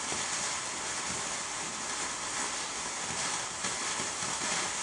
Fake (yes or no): no